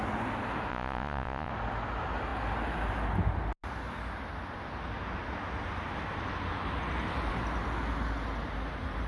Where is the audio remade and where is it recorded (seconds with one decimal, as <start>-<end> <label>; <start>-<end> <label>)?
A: 0.0-0.7 recorded; 0.7-1.5 remade; 1.5-9.1 recorded